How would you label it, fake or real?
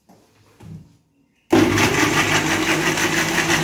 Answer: real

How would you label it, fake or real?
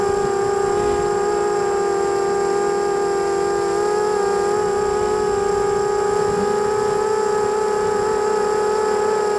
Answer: real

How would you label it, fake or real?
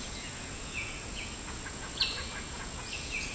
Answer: fake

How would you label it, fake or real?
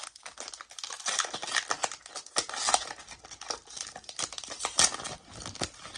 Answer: real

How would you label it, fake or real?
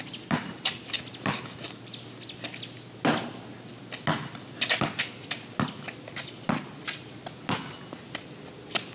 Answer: real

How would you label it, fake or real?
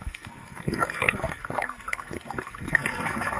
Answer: fake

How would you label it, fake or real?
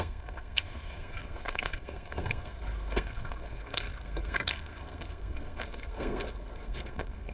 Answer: fake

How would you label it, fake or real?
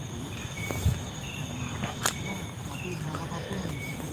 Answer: fake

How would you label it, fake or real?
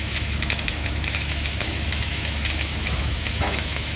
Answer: fake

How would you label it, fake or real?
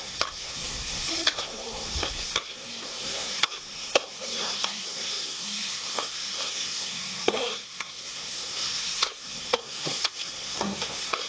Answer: fake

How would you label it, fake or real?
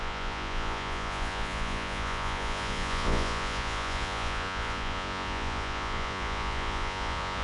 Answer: fake